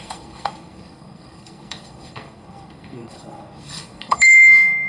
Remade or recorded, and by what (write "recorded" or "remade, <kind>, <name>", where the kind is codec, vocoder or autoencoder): remade, codec, SNAC